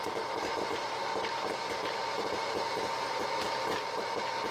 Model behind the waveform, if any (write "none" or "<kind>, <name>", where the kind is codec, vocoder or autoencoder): vocoder, BigVGAN v2